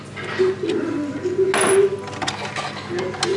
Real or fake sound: real